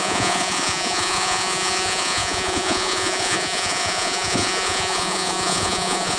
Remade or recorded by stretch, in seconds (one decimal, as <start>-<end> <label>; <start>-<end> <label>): 0.0-6.2 remade